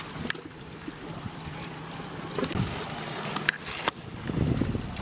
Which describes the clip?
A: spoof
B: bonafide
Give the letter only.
B